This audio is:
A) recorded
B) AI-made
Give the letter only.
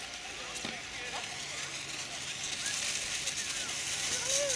A